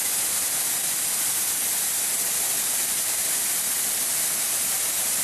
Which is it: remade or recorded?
recorded